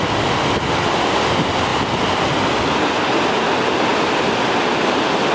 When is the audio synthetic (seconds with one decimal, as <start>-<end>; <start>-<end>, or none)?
none